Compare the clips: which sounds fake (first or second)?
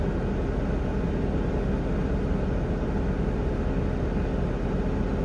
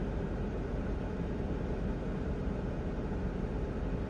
second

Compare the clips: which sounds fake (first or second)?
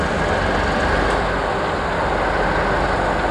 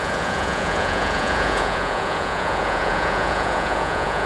second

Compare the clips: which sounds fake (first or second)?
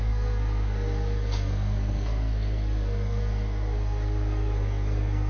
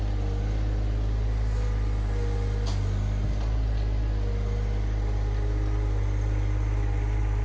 first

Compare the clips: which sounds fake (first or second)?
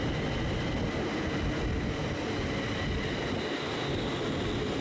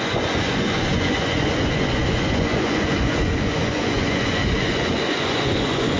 second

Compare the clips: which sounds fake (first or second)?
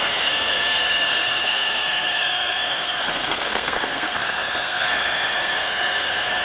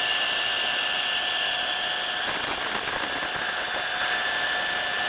first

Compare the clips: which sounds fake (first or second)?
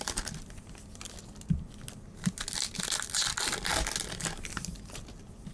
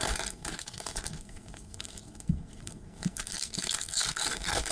second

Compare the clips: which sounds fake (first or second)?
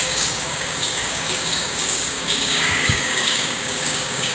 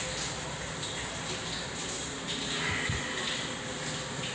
first